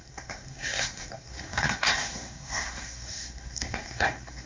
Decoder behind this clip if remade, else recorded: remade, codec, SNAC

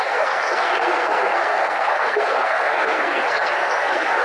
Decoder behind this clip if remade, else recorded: remade, codec, SNAC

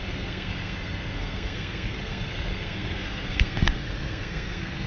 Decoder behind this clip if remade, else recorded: remade, codec, SNAC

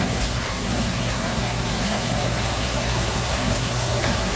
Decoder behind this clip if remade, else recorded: remade, codec, SNAC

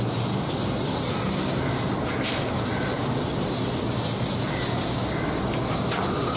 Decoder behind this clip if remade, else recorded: recorded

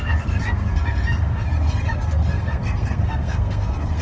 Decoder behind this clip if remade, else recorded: remade, codec, SNAC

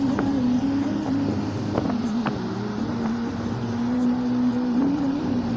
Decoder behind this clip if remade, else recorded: recorded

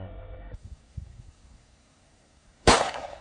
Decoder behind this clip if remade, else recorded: remade, codec, SNAC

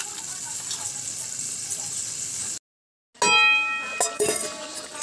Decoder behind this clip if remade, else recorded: recorded